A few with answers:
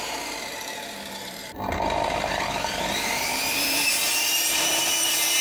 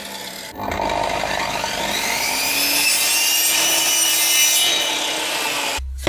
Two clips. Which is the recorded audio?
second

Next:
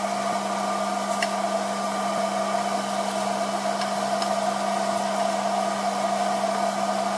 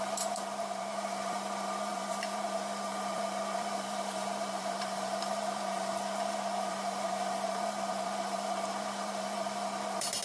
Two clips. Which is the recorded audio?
first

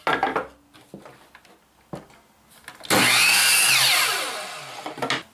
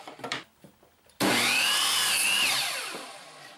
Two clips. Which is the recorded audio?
first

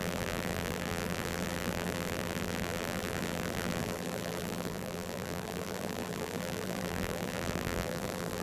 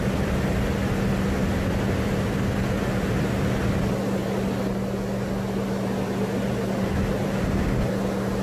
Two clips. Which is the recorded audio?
second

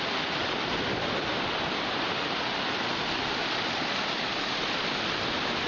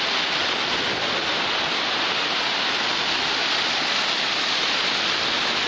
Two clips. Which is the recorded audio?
second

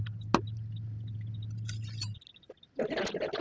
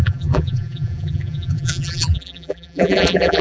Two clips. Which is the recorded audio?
first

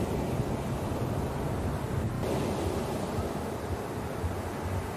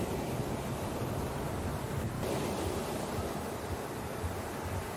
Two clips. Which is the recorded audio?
first